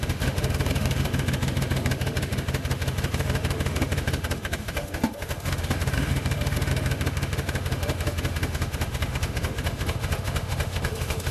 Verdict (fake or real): fake